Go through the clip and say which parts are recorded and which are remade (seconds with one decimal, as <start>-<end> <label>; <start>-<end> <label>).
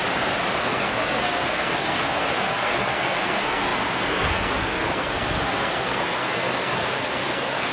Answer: 0.0-0.6 recorded; 0.6-7.7 remade